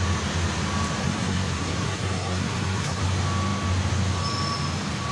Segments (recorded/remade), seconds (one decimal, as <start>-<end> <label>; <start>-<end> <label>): 0.0-1.0 recorded; 1.0-3.0 remade; 3.0-5.1 recorded